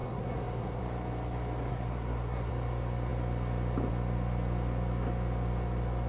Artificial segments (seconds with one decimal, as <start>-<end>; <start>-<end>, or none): 0.0-0.8; 1.7-2.5